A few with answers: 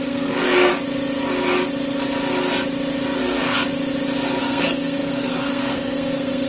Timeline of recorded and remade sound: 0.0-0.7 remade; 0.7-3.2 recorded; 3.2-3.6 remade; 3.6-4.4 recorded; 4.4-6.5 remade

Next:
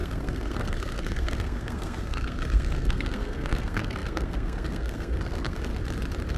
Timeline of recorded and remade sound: 0.0-5.7 remade; 5.7-6.4 recorded

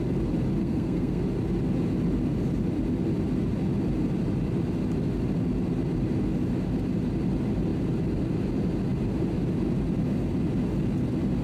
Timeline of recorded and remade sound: 0.0-0.6 recorded; 0.6-1.2 remade; 1.2-11.4 recorded

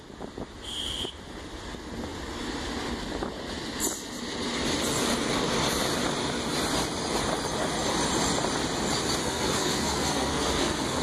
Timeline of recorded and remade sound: 0.0-9.2 recorded; 9.2-11.0 remade

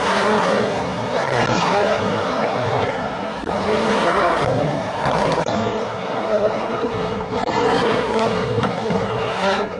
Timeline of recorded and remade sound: 0.0-9.8 remade

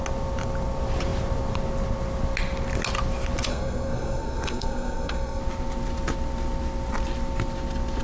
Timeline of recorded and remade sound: 0.0-3.5 recorded; 3.5-5.4 remade; 5.4-8.0 recorded